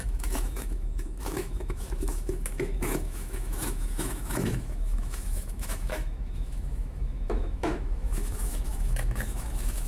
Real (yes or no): no